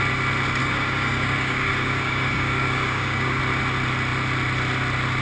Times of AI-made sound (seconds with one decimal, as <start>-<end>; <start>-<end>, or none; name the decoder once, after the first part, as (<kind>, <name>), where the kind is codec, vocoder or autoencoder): 0.6-3.4 (codec, DAC)